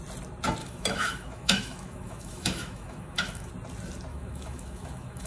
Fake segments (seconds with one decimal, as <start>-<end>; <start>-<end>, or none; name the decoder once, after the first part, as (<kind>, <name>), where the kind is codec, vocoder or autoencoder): 0.6-3.5 (autoencoder, DAC-VAE); 4.1-5.3

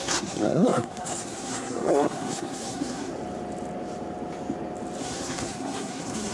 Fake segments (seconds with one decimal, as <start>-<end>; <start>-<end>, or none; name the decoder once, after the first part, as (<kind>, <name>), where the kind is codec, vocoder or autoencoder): 0.0-3.1 (codec, SNAC); 5.0-6.3

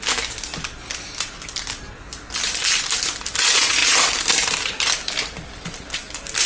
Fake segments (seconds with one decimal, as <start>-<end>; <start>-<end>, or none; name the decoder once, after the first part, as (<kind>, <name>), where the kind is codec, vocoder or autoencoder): none

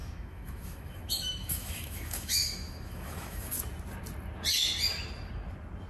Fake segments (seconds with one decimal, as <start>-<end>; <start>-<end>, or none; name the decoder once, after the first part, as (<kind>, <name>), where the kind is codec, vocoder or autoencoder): 0.0-3.5 (autoencoder, DAC-VAE)

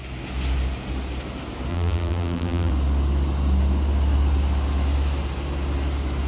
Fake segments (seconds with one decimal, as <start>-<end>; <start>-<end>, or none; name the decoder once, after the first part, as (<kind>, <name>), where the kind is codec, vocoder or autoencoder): 1.7-2.7 (vocoder, BigVGAN v2)